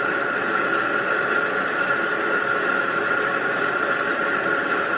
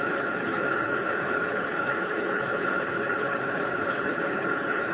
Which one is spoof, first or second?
second